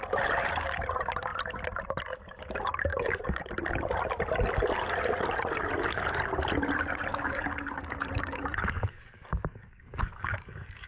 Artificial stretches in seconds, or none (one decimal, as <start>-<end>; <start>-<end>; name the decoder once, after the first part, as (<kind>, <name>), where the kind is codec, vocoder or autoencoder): 2.9-3.5 (codec, DAC); 7.1-10.9